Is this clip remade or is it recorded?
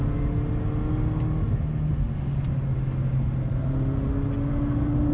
recorded